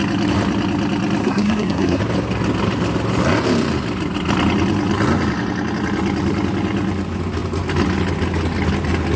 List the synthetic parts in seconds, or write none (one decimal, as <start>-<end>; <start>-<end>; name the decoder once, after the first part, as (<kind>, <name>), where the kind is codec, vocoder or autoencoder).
1.2-2.0 (codec, SNAC)